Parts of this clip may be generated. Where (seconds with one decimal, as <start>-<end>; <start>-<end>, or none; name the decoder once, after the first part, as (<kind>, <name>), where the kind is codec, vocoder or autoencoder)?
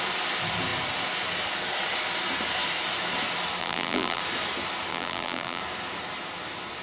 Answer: 3.6-4.2 (vocoder, BigVGAN v2); 4.9-5.6